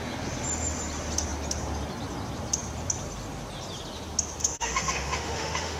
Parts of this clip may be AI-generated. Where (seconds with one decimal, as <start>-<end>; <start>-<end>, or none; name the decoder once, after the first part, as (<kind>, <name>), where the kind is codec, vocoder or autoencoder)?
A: 4.4-5.8 (autoencoder, DAC-VAE)